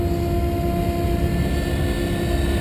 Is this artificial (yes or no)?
no